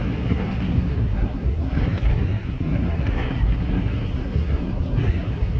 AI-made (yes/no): yes